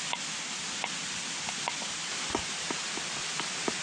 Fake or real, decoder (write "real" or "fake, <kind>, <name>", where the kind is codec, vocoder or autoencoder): real